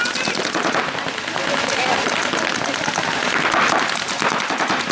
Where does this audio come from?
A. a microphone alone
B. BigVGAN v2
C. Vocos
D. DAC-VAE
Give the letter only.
A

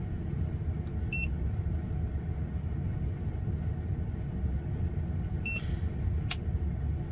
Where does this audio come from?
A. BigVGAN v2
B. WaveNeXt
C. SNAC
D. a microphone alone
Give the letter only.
D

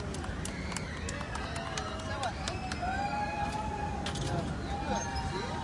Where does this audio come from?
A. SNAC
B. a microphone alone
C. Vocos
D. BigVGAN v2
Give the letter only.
B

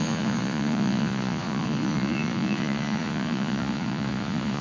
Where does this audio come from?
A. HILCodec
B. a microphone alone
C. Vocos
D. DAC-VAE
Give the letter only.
C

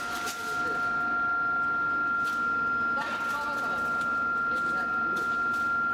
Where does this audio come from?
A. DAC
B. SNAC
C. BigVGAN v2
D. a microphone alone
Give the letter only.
D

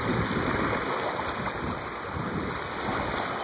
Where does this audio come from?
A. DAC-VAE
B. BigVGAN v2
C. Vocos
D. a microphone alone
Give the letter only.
D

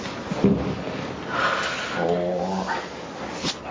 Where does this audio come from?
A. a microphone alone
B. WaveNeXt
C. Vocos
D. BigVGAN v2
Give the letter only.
A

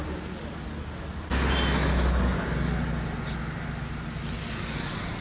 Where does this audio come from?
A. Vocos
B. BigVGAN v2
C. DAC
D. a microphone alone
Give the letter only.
D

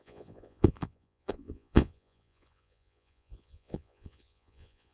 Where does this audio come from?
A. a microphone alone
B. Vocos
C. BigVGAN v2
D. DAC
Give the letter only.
B